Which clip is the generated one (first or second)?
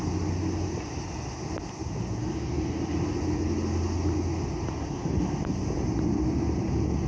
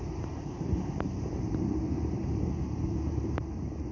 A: second